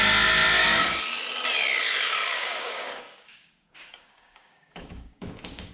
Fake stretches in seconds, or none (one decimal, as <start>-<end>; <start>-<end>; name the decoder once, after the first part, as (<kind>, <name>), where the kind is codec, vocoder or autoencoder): 2.3-5.7 (codec, DAC)